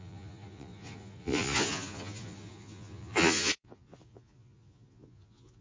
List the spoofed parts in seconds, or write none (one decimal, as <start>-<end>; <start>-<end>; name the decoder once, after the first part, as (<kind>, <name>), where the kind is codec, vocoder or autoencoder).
0.0-5.6 (vocoder, Vocos)